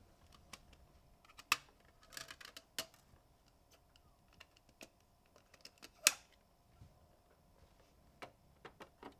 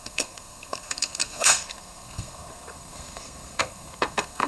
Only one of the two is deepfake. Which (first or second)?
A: second